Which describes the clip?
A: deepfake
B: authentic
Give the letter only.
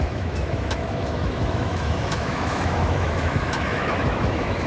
A